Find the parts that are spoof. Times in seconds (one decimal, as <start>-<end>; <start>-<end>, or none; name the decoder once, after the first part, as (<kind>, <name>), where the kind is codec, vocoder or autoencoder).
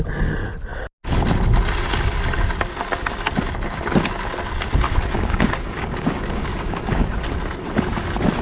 4.9-7.2 (codec, DAC)